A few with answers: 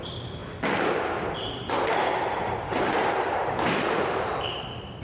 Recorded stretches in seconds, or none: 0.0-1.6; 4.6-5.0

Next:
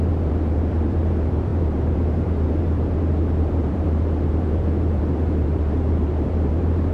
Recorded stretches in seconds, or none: none